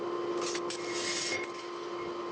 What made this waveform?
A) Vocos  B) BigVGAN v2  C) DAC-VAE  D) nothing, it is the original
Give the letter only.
D